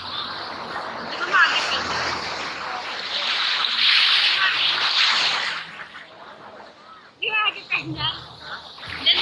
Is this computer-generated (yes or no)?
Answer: no